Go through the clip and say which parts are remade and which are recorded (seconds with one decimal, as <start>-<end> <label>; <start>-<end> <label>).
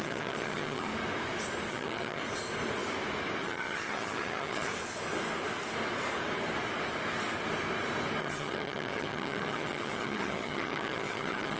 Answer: 0.0-0.9 remade; 0.9-1.7 recorded; 1.7-2.2 remade; 2.2-3.4 recorded; 3.4-4.7 remade; 4.7-8.2 recorded; 8.2-11.6 remade